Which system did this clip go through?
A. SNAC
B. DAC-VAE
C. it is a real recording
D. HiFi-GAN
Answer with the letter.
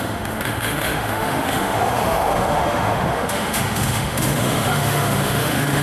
B